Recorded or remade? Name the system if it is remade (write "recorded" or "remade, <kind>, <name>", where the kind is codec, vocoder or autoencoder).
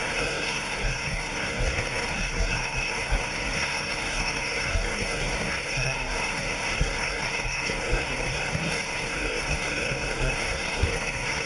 remade, codec, SNAC